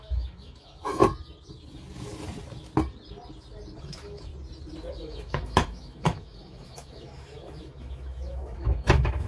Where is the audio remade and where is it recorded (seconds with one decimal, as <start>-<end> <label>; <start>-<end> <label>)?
0.0-1.0 remade; 1.0-3.8 recorded; 3.8-4.3 remade; 4.3-4.9 recorded; 4.9-9.3 remade